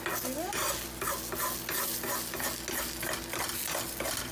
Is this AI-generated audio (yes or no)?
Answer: no